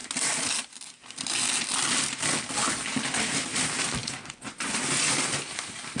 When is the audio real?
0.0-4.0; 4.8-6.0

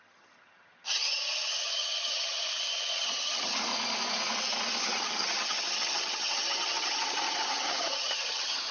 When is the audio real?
3.7-4.8

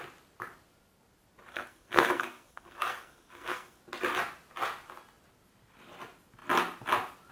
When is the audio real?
0.0-1.5; 3.8-7.3

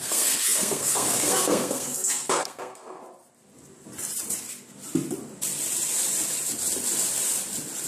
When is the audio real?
3.0-7.9

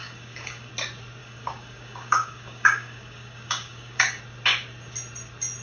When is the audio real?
0.7-1.2; 4.2-5.6

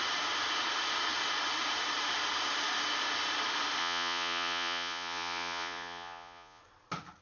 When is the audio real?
0.0-3.8; 6.6-7.2

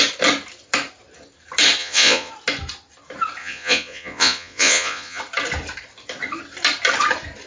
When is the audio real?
0.0-1.8; 2.3-3.4; 5.2-7.5